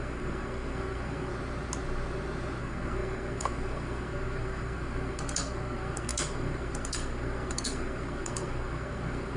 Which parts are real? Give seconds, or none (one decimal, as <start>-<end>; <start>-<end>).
1.3-2.6

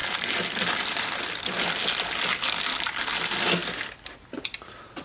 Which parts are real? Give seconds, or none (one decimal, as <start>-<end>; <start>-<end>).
0.0-5.0

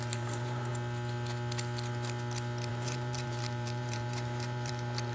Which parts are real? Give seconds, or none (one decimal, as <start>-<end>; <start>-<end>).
0.7-2.7

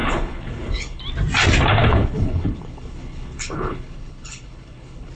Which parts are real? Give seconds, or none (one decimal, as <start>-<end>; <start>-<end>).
1.0-1.8

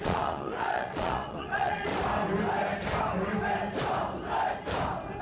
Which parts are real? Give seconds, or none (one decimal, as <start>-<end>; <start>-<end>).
1.9-5.2